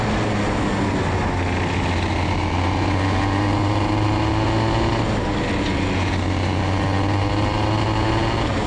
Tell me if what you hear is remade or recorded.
recorded